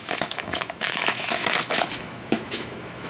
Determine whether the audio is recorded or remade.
remade